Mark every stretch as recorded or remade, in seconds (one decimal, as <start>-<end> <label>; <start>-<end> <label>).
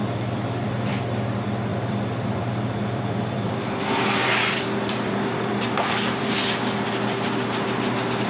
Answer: 0.0-1.0 remade; 1.0-1.7 recorded; 1.7-6.4 remade; 6.4-8.3 recorded